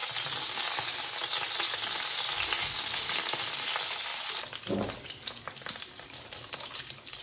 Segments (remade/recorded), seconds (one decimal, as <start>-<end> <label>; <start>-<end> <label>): 0.0-7.2 recorded